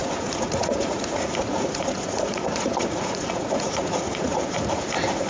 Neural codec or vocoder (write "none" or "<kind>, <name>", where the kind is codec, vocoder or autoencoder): vocoder, Vocos